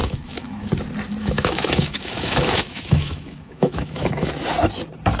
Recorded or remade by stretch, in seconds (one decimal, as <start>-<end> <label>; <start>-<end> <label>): 0.0-0.7 remade; 0.7-1.2 recorded; 1.2-4.3 remade; 4.3-5.2 recorded